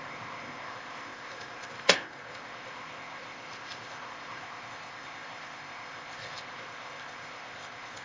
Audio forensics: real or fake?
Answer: fake